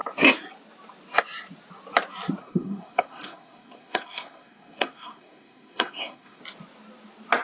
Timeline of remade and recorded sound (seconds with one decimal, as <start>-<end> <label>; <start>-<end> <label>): 0.0-2.4 recorded; 2.4-6.4 remade; 6.4-7.4 recorded